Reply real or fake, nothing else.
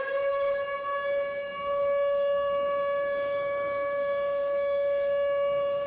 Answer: fake